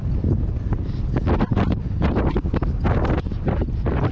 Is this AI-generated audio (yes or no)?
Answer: no